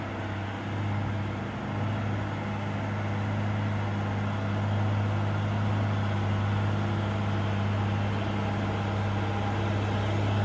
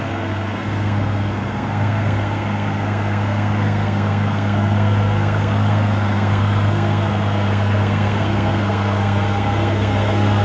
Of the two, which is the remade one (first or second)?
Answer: second